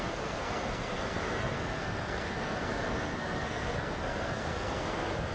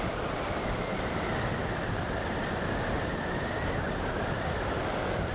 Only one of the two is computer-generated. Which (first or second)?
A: first